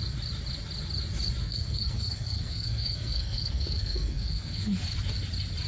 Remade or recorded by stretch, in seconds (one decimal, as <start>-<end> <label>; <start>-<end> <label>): 0.0-1.4 recorded; 1.4-4.8 remade; 4.8-5.7 recorded